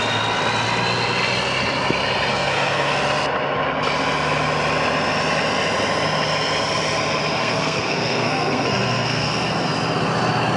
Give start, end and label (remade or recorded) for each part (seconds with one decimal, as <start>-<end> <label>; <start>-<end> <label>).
0.0-2.3 recorded; 2.3-2.9 remade; 2.9-7.4 recorded; 7.4-9.3 remade; 9.3-10.6 recorded